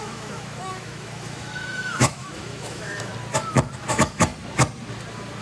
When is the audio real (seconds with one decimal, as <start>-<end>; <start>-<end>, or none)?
3.1-3.9; 4.3-5.4